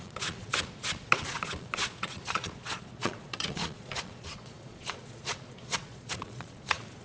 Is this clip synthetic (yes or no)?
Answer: yes